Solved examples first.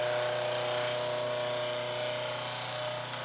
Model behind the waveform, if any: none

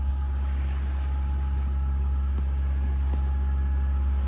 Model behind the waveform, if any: none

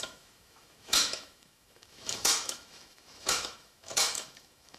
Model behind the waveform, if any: autoencoder, DAC-VAE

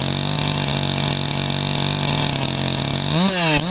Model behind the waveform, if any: none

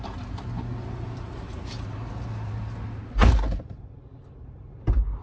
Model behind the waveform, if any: vocoder, BigVGAN v2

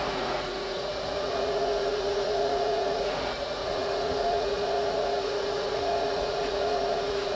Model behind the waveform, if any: vocoder, Vocos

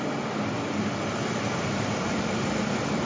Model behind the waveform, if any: none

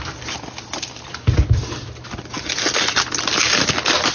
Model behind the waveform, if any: none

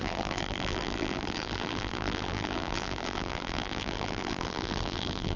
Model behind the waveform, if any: vocoder, BigVGAN v2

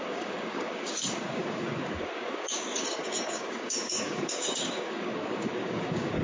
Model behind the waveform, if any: codec, DAC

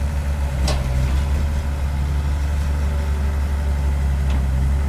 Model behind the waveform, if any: none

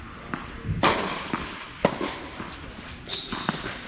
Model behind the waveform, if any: none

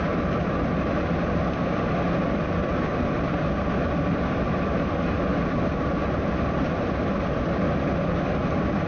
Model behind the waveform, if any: none